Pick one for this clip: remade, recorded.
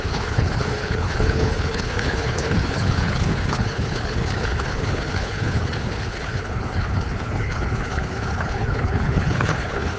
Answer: remade